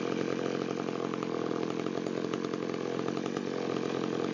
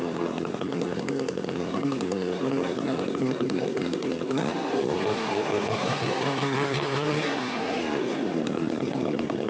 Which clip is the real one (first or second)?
first